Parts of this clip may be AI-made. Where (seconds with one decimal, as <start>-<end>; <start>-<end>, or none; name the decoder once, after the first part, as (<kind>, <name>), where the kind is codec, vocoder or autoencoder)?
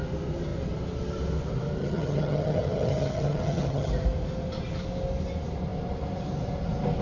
1.8-3.9 (vocoder, HiFi-GAN)